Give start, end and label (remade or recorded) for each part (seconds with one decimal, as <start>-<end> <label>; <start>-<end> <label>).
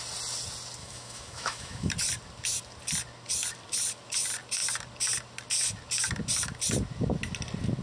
0.0-0.8 recorded; 0.8-1.9 remade; 1.9-7.8 recorded